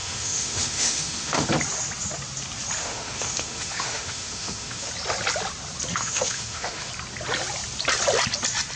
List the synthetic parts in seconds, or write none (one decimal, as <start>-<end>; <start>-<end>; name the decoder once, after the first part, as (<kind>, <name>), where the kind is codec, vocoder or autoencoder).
0.0-1.5 (autoencoder, DAC-VAE); 2.8-4.9; 5.9-6.9